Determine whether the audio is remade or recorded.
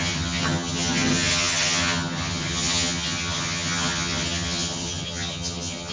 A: remade